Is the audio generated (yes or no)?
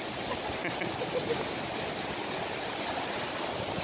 no